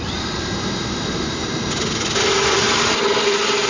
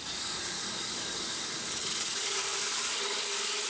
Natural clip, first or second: first